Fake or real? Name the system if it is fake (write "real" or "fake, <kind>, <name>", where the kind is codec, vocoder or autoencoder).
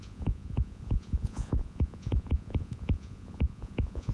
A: fake, vocoder, Vocos